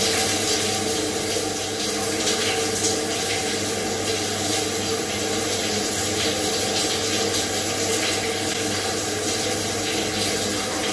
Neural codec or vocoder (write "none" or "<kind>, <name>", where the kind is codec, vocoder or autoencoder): none